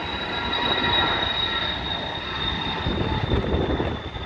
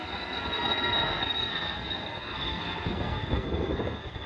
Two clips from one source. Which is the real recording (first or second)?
first